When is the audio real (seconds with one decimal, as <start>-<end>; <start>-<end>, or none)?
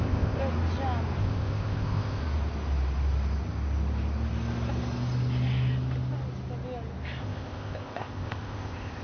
0.4-1.2; 2.2-7.2